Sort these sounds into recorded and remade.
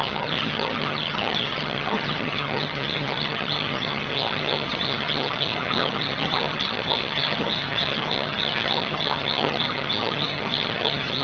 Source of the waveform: remade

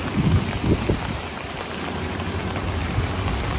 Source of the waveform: recorded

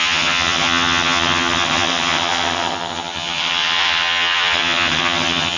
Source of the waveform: remade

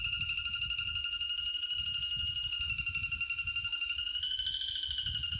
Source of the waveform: recorded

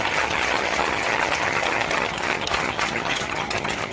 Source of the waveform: remade